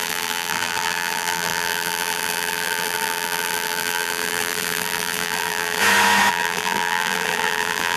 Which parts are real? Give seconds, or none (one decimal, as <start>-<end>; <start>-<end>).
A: 5.8-6.3